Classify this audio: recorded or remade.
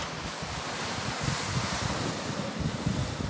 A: recorded